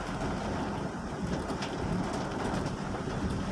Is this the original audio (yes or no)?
no